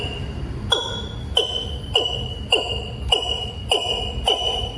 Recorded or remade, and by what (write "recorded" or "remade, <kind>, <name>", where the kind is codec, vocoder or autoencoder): recorded